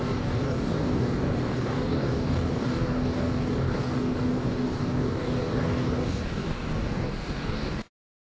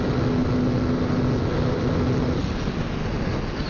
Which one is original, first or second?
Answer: second